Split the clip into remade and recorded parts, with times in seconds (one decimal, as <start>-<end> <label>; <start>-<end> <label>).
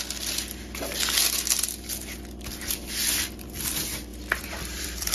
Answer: 0.0-4.1 recorded; 4.1-5.1 remade